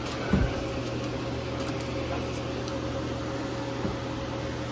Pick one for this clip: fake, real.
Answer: real